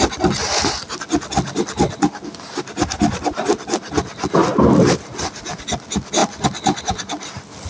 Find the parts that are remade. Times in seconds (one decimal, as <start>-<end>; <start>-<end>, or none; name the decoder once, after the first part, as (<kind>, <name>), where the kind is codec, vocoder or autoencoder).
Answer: none